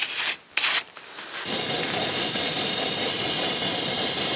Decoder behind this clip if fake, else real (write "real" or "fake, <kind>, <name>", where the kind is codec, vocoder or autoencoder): real